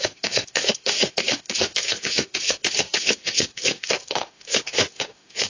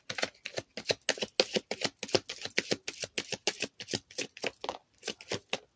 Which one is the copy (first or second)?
first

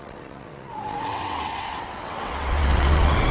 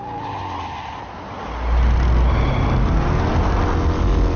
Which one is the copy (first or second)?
first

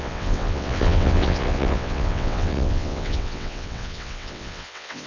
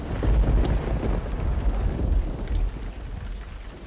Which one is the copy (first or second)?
first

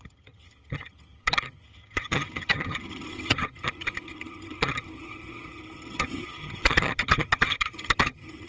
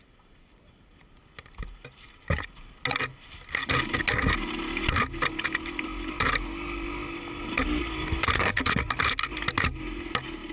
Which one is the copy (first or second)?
first